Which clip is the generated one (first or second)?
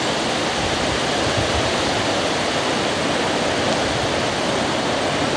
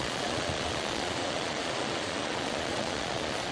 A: second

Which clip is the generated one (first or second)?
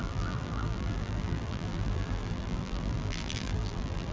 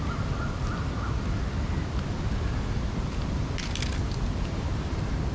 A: first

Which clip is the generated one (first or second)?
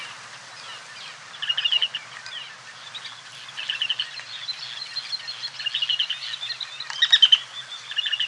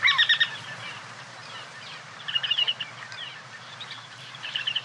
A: second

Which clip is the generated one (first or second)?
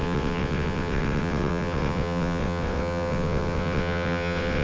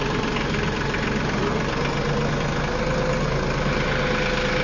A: first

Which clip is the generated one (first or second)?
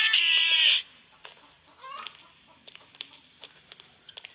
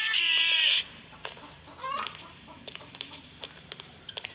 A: second